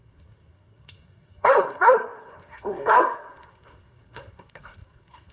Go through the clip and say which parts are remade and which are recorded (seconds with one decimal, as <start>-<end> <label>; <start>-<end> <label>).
0.0-5.3 remade